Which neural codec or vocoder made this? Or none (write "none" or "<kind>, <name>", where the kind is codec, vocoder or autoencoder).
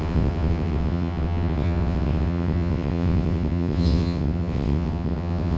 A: vocoder, WaveNeXt